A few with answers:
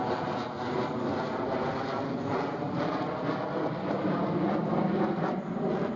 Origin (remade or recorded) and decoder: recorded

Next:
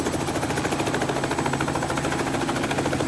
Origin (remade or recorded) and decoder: recorded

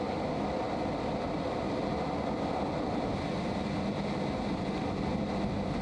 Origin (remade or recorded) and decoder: recorded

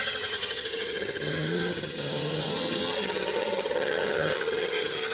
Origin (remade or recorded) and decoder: remade, vocoder, HiFi-GAN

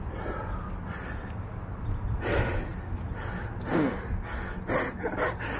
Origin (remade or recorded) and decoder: recorded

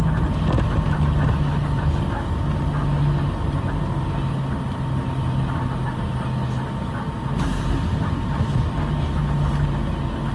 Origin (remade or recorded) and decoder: recorded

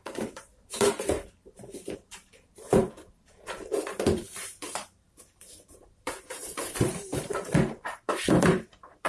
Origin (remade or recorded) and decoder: remade, vocoder, BigVGAN v2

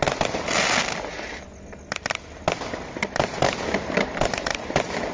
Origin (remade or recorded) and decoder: recorded